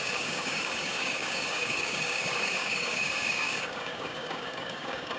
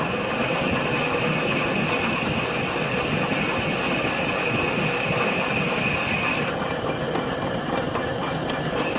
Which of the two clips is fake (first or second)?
first